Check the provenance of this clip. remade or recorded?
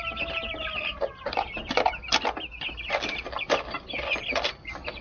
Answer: recorded